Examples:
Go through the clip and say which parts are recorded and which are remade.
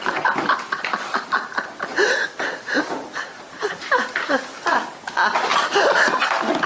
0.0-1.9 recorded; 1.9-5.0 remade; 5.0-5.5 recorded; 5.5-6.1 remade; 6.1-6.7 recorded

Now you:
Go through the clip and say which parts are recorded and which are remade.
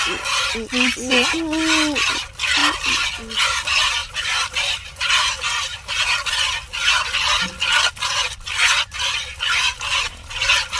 0.0-4.0 recorded; 4.0-5.9 remade; 5.9-10.8 recorded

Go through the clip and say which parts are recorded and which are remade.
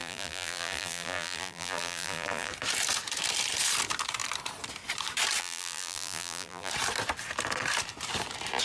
0.0-2.5 remade; 2.5-5.4 recorded; 5.4-6.7 remade; 6.7-8.6 recorded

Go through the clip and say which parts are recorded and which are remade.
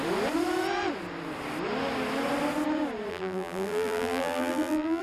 0.0-3.1 recorded; 3.1-5.0 remade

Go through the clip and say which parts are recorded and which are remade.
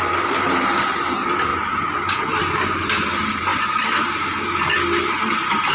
0.0-3.5 remade; 3.5-5.7 recorded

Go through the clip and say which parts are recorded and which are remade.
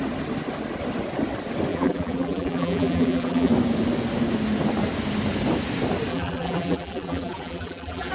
0.0-1.7 recorded; 1.7-3.5 remade; 3.5-6.1 recorded; 6.1-8.1 remade